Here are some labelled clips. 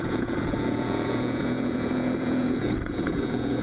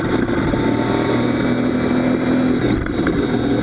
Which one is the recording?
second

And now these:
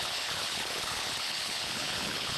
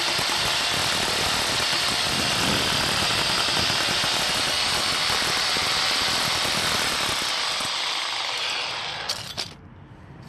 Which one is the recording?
second